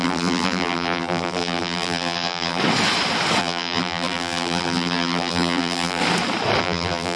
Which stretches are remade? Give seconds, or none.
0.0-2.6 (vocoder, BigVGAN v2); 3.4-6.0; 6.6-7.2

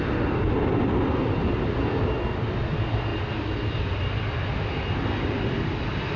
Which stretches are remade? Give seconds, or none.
none

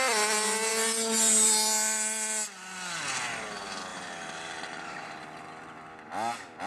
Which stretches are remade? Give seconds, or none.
3.9-5.2 (vocoder, BigVGAN v2)

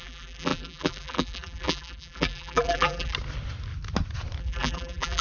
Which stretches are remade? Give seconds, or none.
0.0-3.1 (vocoder, BigVGAN v2); 4.4-5.2

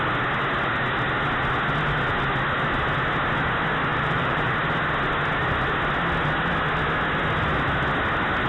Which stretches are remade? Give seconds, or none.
3.9-4.5 (vocoder, BigVGAN v2)